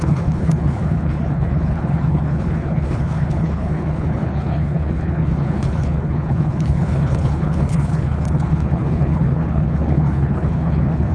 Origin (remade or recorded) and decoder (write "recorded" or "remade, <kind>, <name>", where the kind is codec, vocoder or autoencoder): remade, codec, HILCodec